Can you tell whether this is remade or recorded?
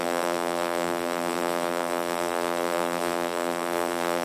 remade